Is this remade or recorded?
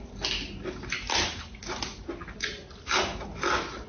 recorded